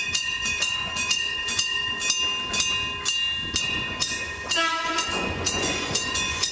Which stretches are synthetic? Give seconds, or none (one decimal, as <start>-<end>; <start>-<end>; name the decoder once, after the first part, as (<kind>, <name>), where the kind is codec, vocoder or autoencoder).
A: 0.0-2.0 (vocoder, Vocos); 3.6-6.5